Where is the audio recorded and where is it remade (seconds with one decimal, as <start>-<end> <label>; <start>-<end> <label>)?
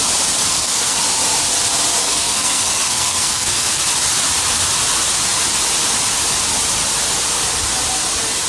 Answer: 0.0-0.5 recorded; 0.5-1.0 remade; 1.0-2.0 recorded; 2.0-3.8 remade; 3.8-8.5 recorded